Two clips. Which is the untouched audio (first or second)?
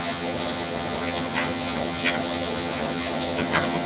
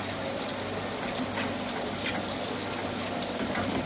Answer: second